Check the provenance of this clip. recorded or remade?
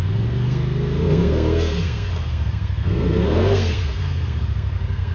remade